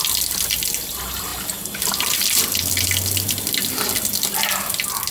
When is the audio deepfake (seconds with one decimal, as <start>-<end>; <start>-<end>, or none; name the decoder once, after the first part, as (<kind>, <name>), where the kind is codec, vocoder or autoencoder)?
none